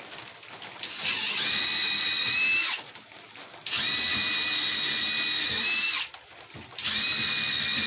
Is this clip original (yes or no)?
yes